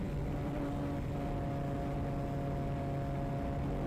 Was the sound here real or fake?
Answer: real